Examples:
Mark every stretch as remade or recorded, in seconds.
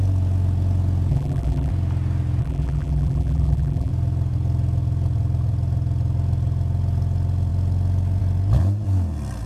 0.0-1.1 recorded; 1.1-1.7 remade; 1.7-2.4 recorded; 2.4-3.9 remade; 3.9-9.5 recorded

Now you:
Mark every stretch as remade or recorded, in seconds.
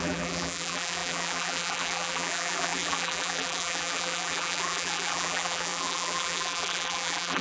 0.0-7.4 remade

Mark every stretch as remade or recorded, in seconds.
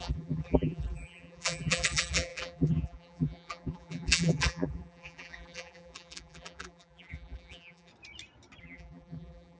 0.0-7.9 remade; 7.9-8.6 recorded; 8.6-9.6 remade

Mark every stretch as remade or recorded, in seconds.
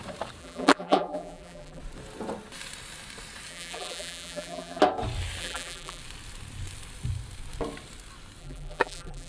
0.0-0.4 recorded; 0.4-1.8 remade; 1.8-3.5 recorded; 3.5-4.8 remade; 4.8-5.4 recorded; 5.4-6.0 remade; 6.0-8.4 recorded; 8.4-9.3 remade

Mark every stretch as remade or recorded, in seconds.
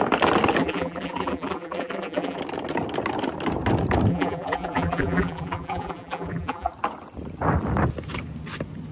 0.0-0.6 recorded; 0.6-2.4 remade; 2.4-4.1 recorded; 4.1-6.7 remade; 6.7-8.9 recorded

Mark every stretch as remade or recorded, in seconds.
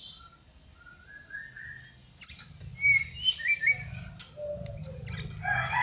0.0-5.8 recorded